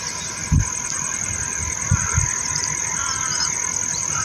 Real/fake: real